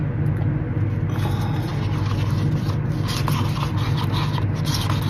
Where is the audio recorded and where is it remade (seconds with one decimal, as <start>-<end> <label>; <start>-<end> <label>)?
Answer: 0.0-5.1 recorded